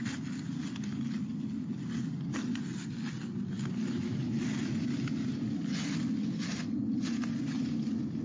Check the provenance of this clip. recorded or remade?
recorded